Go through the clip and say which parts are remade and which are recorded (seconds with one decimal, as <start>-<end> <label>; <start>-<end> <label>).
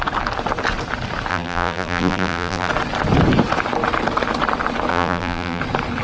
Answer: 0.0-1.3 recorded; 1.3-2.7 remade; 2.7-4.9 recorded; 4.9-5.6 remade; 5.6-6.0 recorded